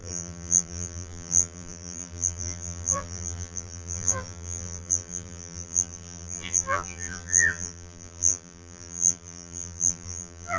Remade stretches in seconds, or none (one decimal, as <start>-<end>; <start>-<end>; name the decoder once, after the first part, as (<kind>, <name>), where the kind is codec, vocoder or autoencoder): 0.0-10.6 (vocoder, BigVGAN v2)